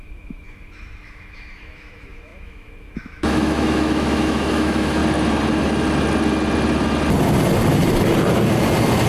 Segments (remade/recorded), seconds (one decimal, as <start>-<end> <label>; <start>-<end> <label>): 0.0-5.0 remade; 5.0-9.1 recorded